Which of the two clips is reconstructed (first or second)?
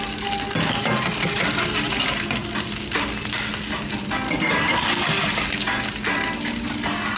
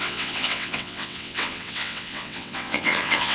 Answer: second